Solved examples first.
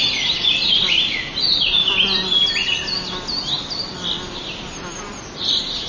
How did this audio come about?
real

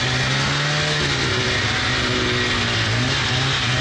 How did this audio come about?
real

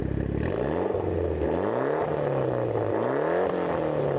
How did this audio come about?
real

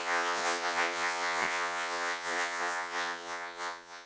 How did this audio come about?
fake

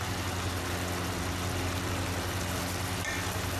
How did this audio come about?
real